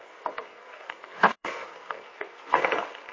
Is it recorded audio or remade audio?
remade